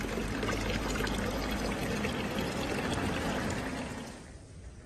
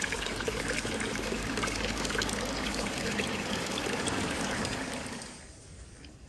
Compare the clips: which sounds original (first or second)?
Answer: first